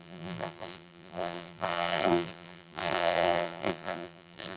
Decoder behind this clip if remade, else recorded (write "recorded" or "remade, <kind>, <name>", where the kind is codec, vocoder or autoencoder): remade, vocoder, BigVGAN v2